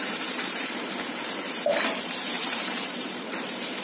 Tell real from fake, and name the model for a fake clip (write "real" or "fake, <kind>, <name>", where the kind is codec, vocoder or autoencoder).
fake, vocoder, BigVGAN v2